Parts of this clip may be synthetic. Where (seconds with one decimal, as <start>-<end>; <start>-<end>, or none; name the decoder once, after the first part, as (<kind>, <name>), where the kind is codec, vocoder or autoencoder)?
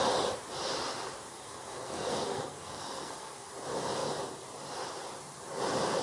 1.3-3.5 (codec, SNAC)